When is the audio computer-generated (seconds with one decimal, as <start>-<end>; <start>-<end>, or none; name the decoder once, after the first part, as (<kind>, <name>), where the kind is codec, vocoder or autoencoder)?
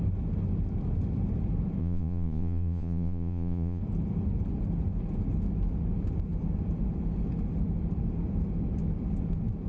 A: 1.8-3.8 (vocoder, Vocos)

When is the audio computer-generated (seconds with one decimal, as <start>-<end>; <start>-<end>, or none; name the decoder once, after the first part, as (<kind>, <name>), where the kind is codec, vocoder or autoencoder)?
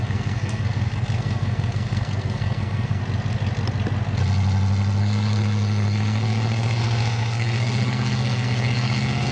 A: 0.0-3.0 (codec, SNAC); 5.0-9.3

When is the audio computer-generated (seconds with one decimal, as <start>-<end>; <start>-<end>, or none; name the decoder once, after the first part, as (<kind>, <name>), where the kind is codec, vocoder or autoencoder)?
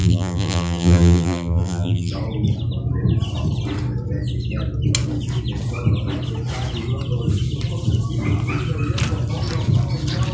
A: 0.0-2.1 (vocoder, BigVGAN v2)